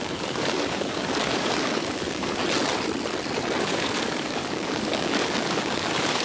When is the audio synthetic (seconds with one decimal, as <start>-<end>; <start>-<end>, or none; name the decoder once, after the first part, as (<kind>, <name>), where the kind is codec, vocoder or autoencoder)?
0.0-2.4 (codec, DAC); 3.6-6.2